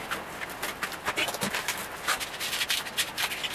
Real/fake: real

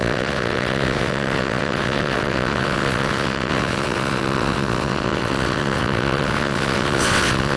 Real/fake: fake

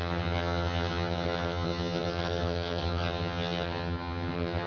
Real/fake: fake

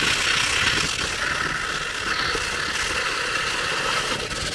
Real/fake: real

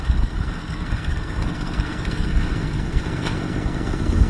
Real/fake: fake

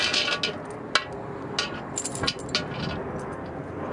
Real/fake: real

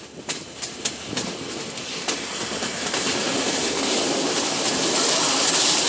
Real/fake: real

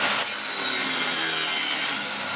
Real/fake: real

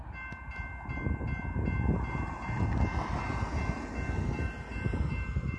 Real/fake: real